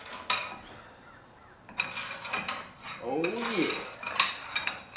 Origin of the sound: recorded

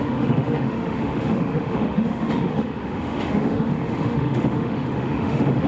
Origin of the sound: remade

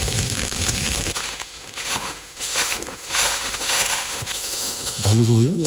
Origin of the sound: remade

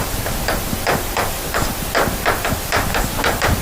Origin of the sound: recorded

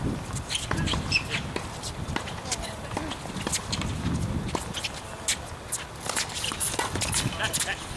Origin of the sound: recorded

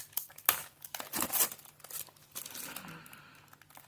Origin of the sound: recorded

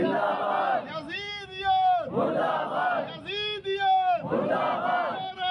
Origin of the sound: recorded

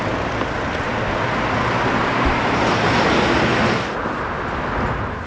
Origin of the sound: recorded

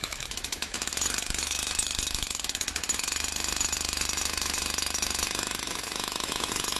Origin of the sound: remade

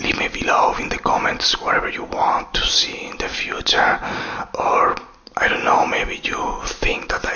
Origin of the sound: recorded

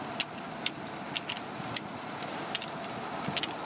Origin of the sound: recorded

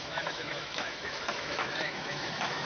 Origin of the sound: remade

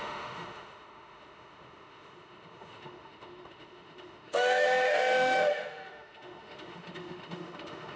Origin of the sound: remade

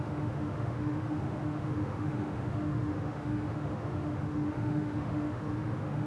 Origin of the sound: remade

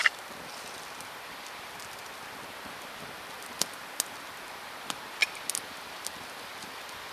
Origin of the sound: recorded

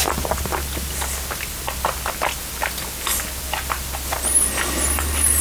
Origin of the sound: recorded